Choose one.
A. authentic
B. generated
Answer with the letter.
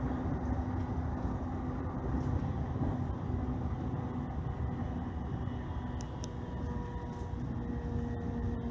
A